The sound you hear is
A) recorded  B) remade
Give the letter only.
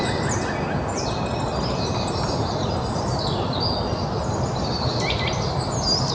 A